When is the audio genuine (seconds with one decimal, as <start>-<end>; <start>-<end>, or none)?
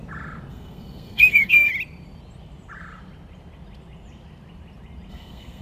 0.0-0.5; 1.7-5.1